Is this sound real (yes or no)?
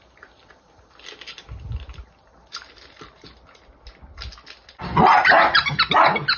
yes